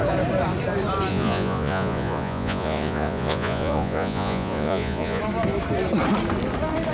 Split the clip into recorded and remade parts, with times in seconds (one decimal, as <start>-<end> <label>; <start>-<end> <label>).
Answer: 0.0-1.1 recorded; 1.1-5.2 remade; 5.2-6.9 recorded